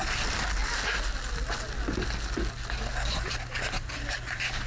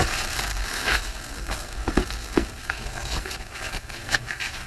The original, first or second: first